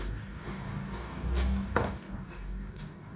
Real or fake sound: fake